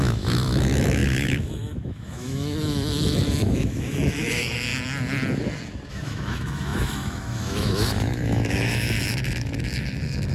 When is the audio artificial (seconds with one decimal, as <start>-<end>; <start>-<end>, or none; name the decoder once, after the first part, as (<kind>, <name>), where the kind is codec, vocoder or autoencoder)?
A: 0.0-4.7 (autoencoder, DAC-VAE); 5.9-10.3